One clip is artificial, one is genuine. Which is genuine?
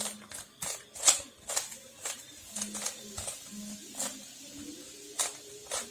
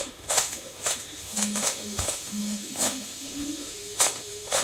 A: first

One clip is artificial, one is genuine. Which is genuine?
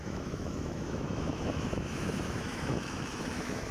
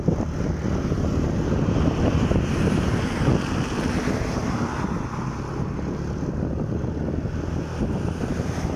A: second